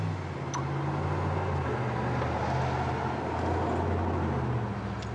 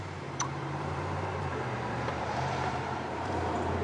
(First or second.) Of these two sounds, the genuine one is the first